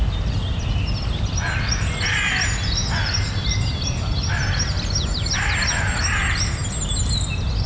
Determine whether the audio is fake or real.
real